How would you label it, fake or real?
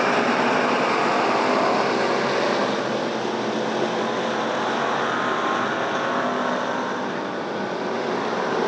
real